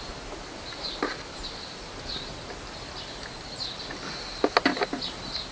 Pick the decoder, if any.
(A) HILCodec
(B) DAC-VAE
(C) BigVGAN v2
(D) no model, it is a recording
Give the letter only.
D